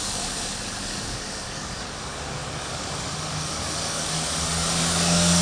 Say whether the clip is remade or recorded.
remade